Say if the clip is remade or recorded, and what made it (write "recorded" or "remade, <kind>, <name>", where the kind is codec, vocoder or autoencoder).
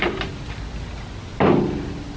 recorded